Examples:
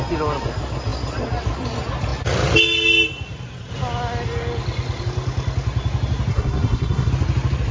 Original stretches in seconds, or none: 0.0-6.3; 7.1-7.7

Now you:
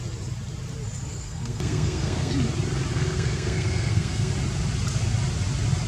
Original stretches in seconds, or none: 0.0-1.1; 2.3-2.9; 4.3-5.9

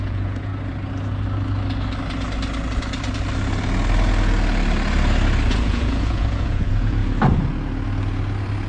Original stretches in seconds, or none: 0.5-5.5; 7.0-8.7

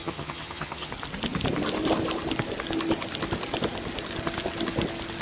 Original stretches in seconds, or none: 0.9-5.2

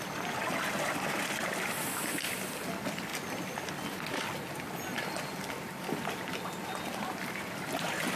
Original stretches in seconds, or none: 0.0-8.2

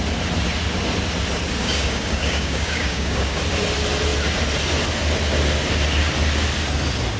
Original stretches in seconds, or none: 0.0-1.6; 3.4-7.2